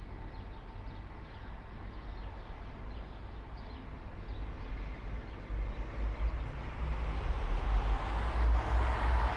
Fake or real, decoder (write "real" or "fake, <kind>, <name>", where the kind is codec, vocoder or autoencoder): real